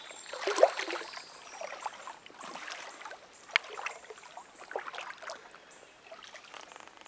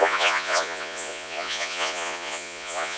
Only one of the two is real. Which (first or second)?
first